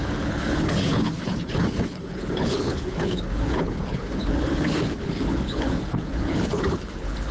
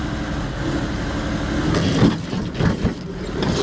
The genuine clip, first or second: second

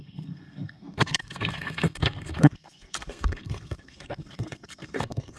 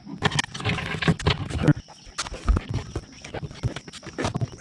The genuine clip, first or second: second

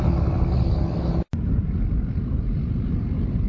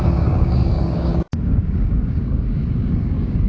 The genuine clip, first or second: first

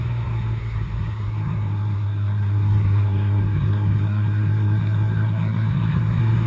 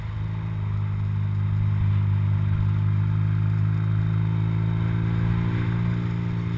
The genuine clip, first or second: second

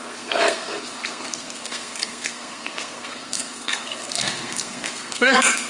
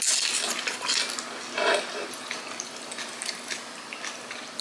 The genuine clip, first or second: second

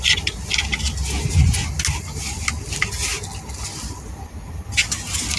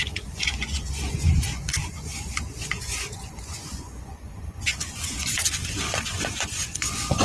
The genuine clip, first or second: first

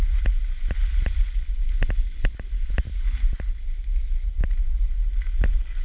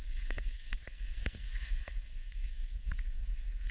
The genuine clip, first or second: first